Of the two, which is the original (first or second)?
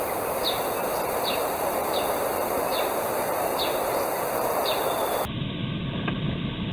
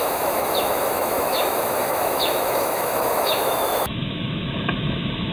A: first